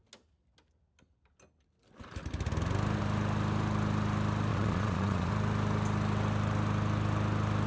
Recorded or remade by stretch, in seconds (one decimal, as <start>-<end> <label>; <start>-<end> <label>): 0.0-4.5 recorded; 4.5-5.3 remade; 5.3-7.7 recorded